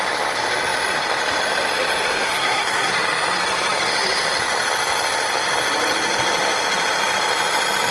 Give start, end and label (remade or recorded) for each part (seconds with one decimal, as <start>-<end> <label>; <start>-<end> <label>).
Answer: 0.0-2.1 recorded; 2.1-2.9 remade; 2.9-7.9 recorded